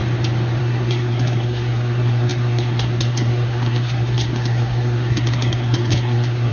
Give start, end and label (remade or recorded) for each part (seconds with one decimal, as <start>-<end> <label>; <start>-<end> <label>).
0.0-0.6 recorded; 0.6-6.5 remade